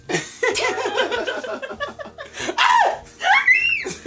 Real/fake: real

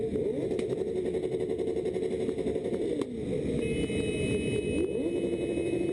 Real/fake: real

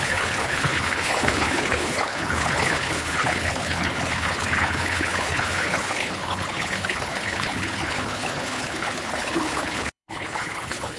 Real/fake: fake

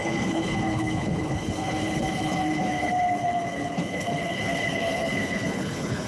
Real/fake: fake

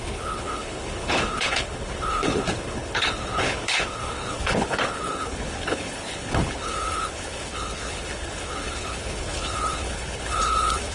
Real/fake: fake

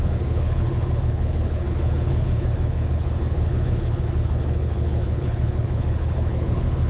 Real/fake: fake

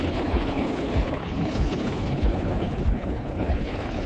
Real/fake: fake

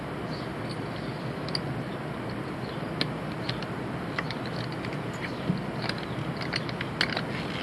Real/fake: real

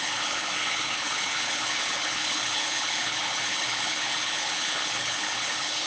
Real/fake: fake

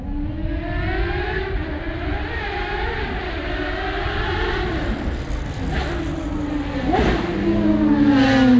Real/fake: real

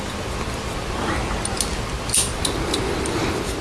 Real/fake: real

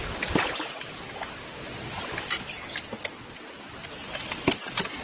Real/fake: real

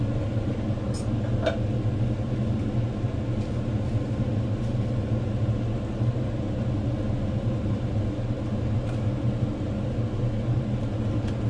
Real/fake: real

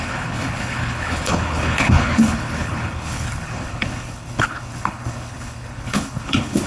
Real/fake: fake